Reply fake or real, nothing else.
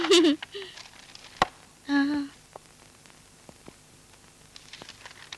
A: real